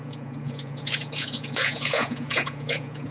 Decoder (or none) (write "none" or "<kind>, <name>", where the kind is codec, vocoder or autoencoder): vocoder, Vocos